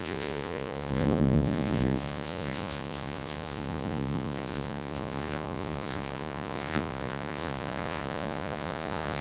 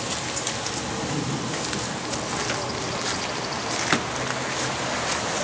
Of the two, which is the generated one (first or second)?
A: first